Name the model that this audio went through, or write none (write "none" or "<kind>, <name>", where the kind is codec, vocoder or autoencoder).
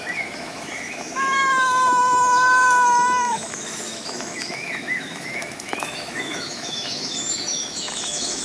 autoencoder, DAC-VAE